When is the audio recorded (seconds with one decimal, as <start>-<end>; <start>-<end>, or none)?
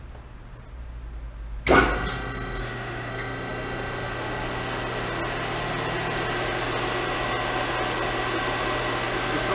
0.0-2.6; 3.1-9.5